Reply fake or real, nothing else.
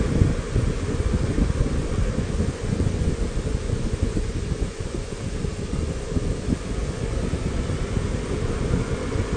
fake